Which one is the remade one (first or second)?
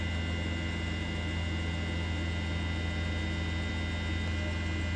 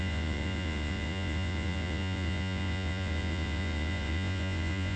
second